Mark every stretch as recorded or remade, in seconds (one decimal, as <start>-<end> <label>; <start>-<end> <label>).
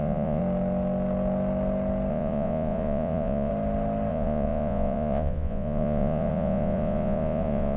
0.0-0.4 remade; 0.4-2.1 recorded; 2.1-3.5 remade; 3.5-4.1 recorded; 4.1-7.8 remade